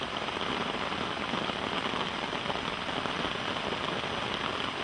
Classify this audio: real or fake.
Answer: real